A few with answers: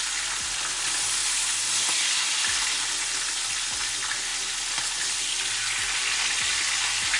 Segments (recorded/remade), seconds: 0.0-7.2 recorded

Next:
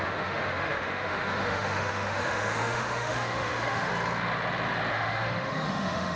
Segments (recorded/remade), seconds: 0.0-3.9 remade; 3.9-4.9 recorded; 4.9-6.2 remade

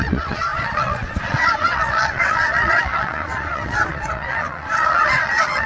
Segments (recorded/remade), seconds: 0.0-5.7 remade